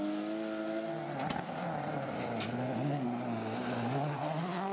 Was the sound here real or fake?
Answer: real